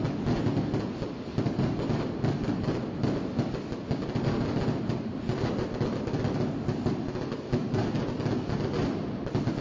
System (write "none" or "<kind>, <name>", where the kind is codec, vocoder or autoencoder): none